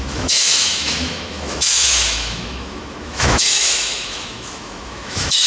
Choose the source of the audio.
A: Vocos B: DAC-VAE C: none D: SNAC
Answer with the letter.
B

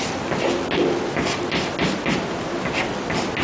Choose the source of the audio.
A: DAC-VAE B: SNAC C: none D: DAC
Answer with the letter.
C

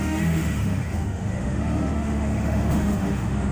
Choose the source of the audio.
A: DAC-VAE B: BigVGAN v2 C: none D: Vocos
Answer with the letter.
A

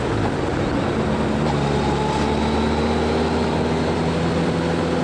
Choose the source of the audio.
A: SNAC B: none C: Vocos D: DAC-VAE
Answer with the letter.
B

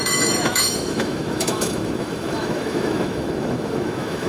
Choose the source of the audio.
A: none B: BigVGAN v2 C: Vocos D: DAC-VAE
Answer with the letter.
D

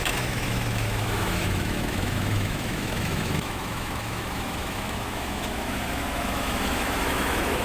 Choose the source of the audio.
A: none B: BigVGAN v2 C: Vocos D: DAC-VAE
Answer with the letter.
D